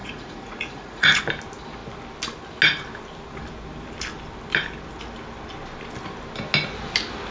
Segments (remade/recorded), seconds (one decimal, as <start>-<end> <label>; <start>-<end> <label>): 0.0-1.2 remade; 1.2-7.3 recorded